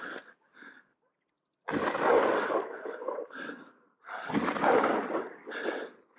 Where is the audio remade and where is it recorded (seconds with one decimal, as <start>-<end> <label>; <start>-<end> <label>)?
0.0-6.2 recorded